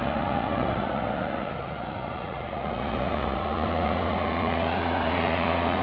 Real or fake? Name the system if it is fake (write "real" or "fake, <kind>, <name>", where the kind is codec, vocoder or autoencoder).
fake, vocoder, Vocos